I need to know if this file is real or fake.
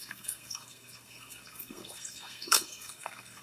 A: fake